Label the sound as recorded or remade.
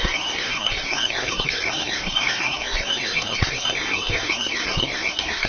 remade